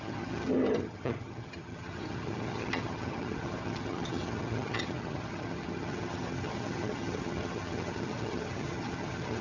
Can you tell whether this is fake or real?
fake